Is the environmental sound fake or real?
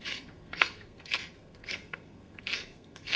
fake